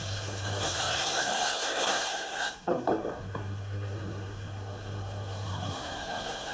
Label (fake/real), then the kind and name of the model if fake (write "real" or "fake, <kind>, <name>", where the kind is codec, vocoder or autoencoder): fake, codec, SNAC